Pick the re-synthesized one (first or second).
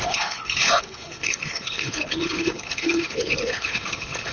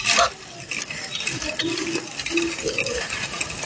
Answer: first